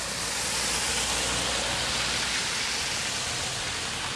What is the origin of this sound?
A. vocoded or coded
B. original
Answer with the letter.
B